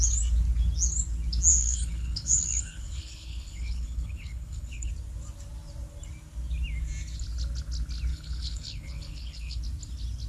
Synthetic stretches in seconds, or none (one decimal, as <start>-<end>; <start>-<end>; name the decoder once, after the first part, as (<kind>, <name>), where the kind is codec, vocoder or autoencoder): 1.5-4.9 (codec, HILCodec); 8.1-9.6